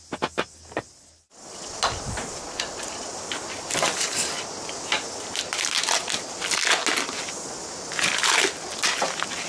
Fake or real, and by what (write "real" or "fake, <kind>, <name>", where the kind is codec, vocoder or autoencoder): real